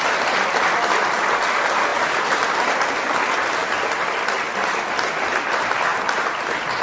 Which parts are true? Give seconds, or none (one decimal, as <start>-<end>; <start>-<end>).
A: 0.0-6.8